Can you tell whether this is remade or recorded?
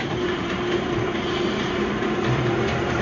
remade